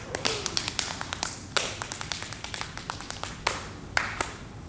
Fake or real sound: real